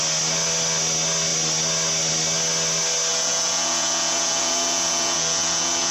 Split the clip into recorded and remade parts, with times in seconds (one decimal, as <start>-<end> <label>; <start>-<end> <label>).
0.0-3.1 recorded; 3.1-5.9 remade